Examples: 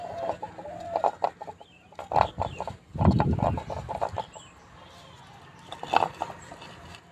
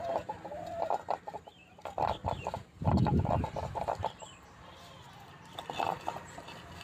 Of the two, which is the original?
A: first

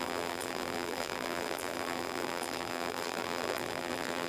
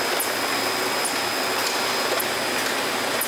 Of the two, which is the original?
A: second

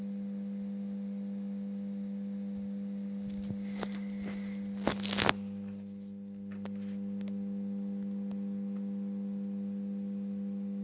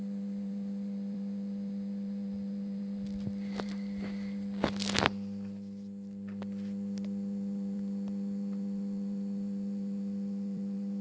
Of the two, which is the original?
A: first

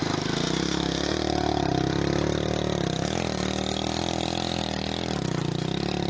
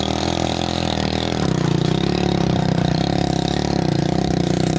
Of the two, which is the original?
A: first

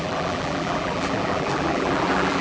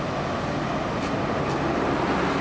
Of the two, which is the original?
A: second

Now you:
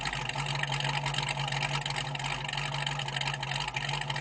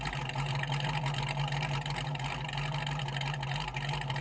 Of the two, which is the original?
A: first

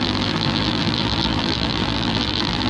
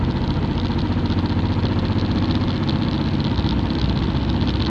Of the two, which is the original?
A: second